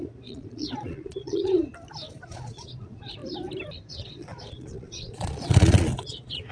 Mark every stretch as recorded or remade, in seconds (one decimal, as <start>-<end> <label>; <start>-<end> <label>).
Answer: 0.0-1.6 remade; 1.6-2.2 recorded; 2.2-3.2 remade; 3.2-3.9 recorded; 3.9-6.5 remade